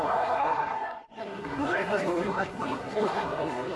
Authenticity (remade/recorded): remade